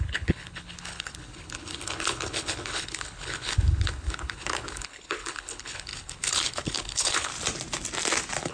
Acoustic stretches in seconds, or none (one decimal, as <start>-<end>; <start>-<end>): 7.3-8.5